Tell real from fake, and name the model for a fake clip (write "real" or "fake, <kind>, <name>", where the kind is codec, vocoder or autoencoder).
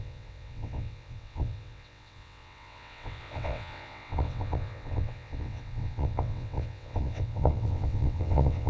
fake, vocoder, WaveNeXt